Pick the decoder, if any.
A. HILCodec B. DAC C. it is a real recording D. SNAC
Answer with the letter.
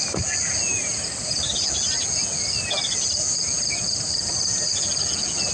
C